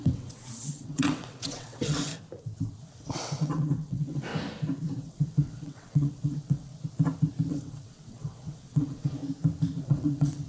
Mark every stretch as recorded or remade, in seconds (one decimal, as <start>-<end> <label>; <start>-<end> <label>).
0.0-2.1 remade; 2.1-2.8 recorded; 2.8-4.3 remade; 4.3-5.0 recorded; 5.0-6.7 remade; 6.7-7.5 recorded; 7.5-9.2 remade; 9.2-9.8 recorded; 9.8-10.5 remade